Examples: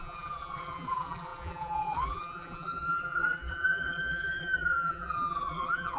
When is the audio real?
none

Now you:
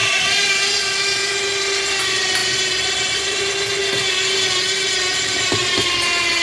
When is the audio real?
3.8-5.2